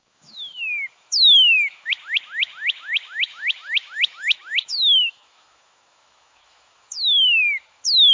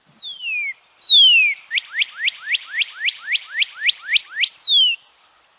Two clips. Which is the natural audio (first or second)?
second